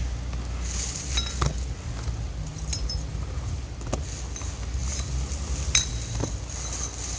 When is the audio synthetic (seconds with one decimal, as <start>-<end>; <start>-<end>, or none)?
none